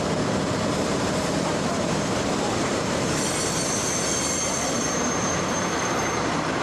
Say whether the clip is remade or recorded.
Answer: remade